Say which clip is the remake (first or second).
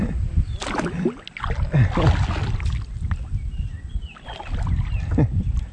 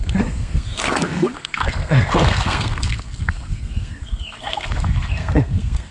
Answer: second